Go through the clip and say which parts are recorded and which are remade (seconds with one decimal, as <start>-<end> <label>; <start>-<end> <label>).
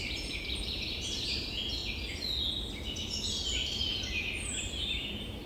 0.0-1.8 remade; 1.8-5.1 recorded; 5.1-5.5 remade